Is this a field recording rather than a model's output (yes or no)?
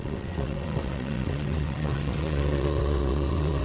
no